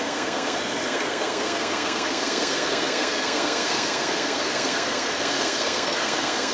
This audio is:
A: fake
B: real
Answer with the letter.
A